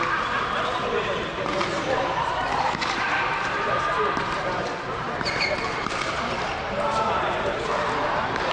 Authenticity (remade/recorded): remade